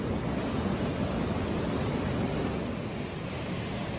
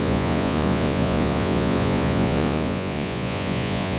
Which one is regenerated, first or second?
second